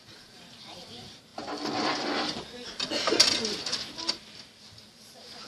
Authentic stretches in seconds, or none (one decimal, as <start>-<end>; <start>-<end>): 1.3-4.6